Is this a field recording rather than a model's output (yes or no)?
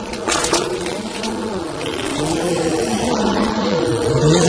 no